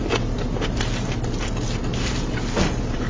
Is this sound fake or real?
real